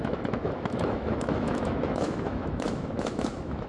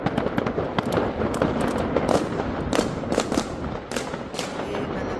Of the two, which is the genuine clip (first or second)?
second